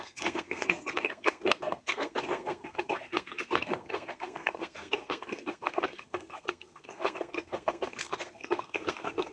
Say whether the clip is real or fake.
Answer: fake